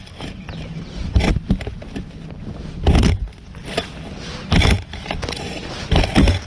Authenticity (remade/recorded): recorded